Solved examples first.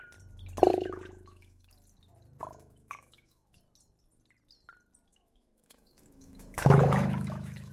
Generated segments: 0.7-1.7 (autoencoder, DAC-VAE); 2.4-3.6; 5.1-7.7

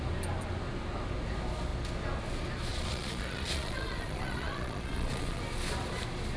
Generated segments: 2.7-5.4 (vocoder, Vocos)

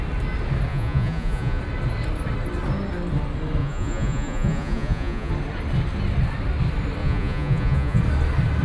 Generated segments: 0.7-1.6 (vocoder, Vocos); 3.6-5.3; 7.0-8.0

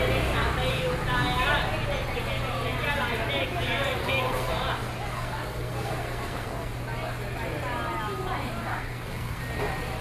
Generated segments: 4.0-4.5 (codec, SNAC); 5.1-6.7; 8.7-9.4

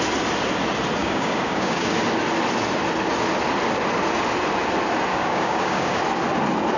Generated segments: 1.0-1.9 (codec, DAC); 5.1-6.0

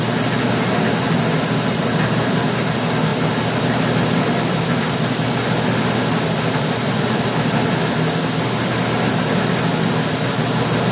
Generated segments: none